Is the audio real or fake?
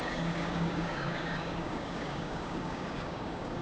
fake